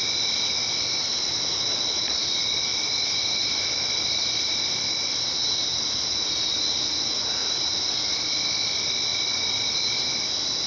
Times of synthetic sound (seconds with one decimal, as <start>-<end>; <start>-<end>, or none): 1.1-2.2; 2.7-4.8; 7.4-8.4; 9.1-9.8